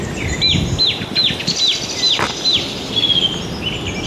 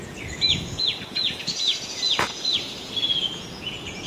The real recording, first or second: first